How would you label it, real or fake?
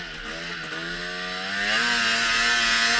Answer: real